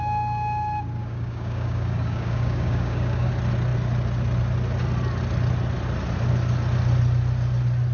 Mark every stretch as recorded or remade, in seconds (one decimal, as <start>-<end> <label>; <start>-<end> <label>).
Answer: 0.0-1.0 recorded; 1.0-3.3 remade; 3.3-7.9 recorded